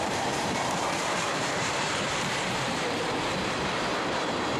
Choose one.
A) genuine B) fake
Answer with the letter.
B